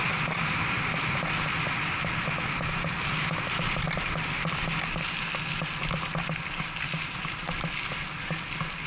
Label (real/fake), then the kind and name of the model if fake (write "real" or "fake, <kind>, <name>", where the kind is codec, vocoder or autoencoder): real